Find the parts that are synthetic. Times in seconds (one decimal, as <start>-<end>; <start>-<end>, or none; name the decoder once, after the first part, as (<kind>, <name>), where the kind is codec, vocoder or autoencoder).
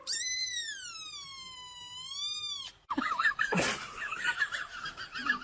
none